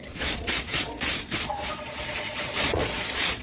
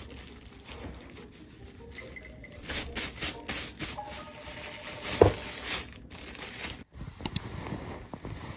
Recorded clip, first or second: second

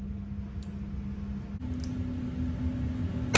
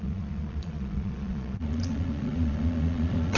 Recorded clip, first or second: first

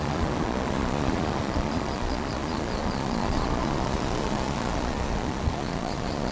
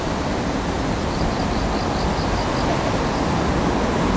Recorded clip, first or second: second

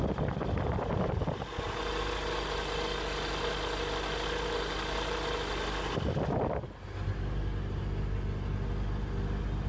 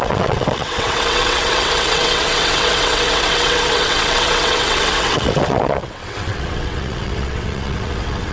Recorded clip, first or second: first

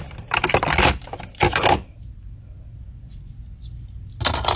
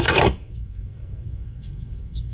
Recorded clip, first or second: first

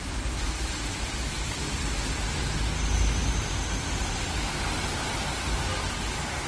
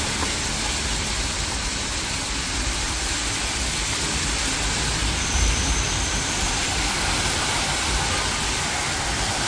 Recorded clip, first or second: first